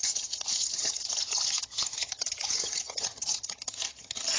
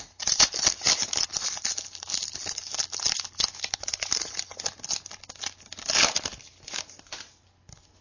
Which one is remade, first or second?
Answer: first